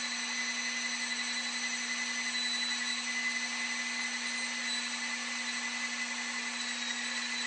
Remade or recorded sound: recorded